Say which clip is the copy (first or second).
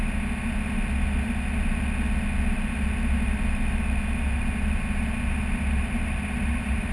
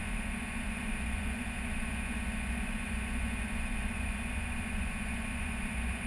second